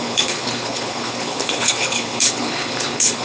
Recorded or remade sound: remade